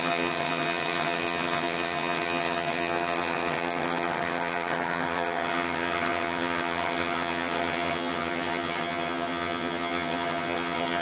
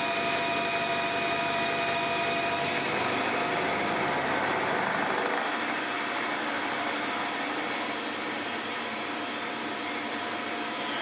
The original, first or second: second